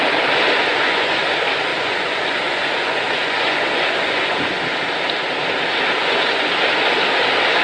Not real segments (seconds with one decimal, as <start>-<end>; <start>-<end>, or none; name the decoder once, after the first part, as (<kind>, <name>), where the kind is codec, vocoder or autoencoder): 0.7-1.2 (vocoder, Vocos); 1.7-4.5; 6.0-6.5